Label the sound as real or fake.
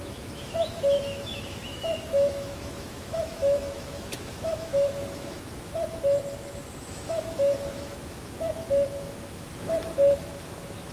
fake